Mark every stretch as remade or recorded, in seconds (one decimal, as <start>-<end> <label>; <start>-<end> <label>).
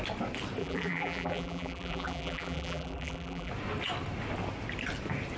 0.0-0.6 recorded; 0.6-3.5 remade; 3.5-5.4 recorded